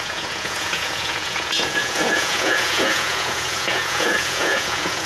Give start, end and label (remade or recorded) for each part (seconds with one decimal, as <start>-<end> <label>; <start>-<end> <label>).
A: 0.0-5.1 remade